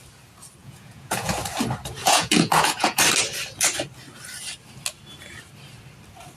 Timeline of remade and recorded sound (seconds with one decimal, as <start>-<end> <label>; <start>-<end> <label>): 0.0-0.6 recorded; 0.6-1.3 remade; 1.3-2.0 recorded; 2.0-3.0 remade; 3.0-6.4 recorded